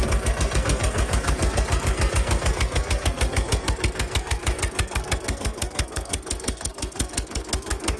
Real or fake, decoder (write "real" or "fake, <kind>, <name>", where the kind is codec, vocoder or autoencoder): fake, codec, SNAC